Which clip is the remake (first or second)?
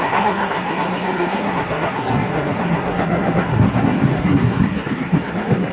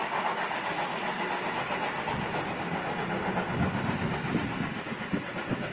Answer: first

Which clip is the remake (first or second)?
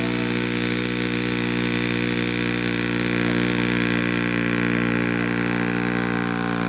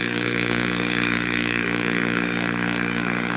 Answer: second